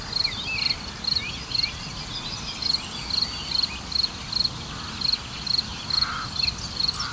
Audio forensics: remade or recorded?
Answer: recorded